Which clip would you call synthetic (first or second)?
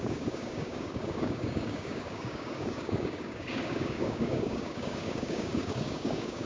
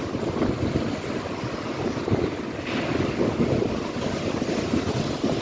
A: first